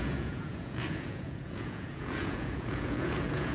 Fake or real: fake